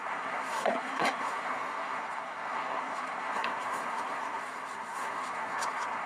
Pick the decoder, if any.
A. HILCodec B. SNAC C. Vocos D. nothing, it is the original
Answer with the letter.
B